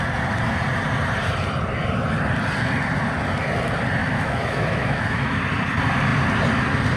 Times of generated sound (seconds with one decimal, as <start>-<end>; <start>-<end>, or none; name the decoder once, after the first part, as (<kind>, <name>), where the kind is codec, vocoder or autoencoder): 4.0-5.4 (autoencoder, DAC-VAE)

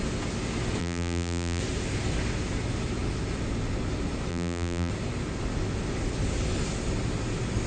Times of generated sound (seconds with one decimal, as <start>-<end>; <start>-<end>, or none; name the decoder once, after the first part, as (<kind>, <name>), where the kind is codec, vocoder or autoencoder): 0.8-1.6 (vocoder, BigVGAN v2); 4.3-4.9

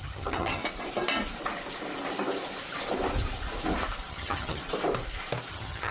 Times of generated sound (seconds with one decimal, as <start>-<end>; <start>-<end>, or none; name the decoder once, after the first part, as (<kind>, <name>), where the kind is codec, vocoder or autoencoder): 0.0-0.6 (vocoder, HiFi-GAN); 4.1-4.6; 5.5-5.9

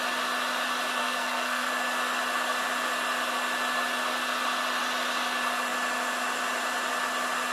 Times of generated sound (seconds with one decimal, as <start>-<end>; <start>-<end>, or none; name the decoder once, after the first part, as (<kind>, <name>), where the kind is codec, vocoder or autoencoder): 1.0-1.7 (codec, SNAC)